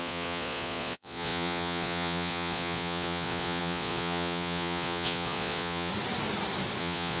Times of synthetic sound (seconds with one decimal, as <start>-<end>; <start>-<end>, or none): 0.0-5.9; 6.8-7.2